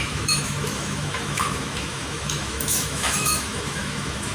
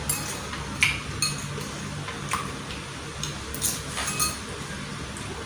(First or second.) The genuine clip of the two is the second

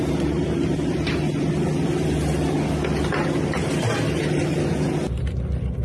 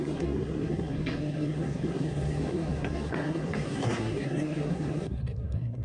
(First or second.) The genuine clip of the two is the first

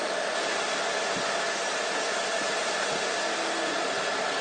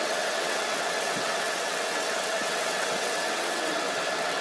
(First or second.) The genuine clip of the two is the first